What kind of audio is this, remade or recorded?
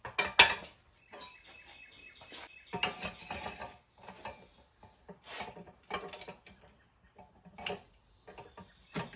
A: recorded